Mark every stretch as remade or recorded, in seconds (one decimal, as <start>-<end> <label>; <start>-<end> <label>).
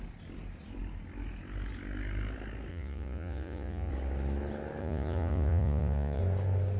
0.0-2.7 recorded; 2.7-3.9 remade; 3.9-4.8 recorded; 4.8-6.2 remade; 6.2-6.8 recorded